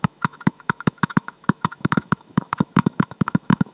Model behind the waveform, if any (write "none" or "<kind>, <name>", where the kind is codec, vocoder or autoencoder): autoencoder, DAC-VAE